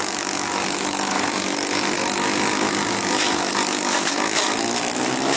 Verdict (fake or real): fake